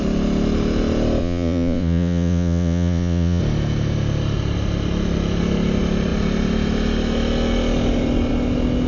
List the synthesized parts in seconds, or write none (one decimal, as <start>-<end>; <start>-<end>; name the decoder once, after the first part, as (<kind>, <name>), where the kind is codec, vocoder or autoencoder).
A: 1.2-3.4 (vocoder, Vocos)